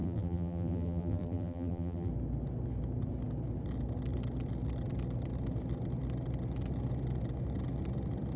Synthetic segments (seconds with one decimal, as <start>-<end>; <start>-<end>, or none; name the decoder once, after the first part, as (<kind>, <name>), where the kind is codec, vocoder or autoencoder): 0.0-2.1 (vocoder, BigVGAN v2)